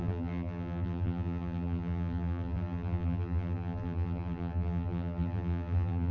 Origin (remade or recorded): remade